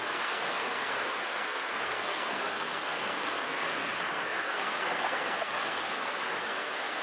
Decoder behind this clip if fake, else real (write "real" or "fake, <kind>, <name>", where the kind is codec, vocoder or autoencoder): fake, codec, SNAC